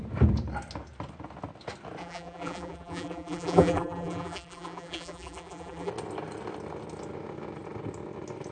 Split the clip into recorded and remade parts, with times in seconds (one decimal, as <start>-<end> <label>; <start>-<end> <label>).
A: 0.0-2.0 recorded; 2.0-5.9 remade; 5.9-8.5 recorded

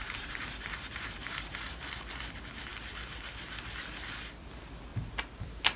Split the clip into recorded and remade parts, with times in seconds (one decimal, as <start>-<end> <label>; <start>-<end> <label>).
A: 0.0-1.8 remade; 1.8-5.8 recorded

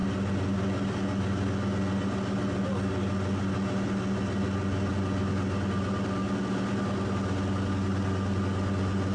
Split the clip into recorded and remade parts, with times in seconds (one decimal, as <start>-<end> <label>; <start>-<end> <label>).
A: 0.0-9.1 recorded

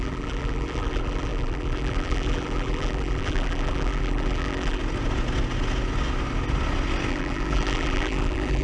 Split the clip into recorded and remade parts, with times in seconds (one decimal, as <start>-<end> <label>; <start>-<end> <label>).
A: 0.0-4.8 remade; 4.8-7.1 recorded; 7.1-8.6 remade

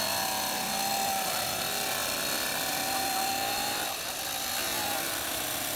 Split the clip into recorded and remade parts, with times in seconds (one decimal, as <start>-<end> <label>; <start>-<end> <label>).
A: 0.0-0.9 recorded; 0.9-1.6 remade; 1.6-2.0 recorded; 2.0-5.8 remade

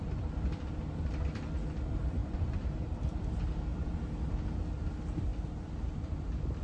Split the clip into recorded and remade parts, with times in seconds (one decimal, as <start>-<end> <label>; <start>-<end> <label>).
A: 0.0-2.2 recorded; 2.2-3.9 remade; 3.9-6.6 recorded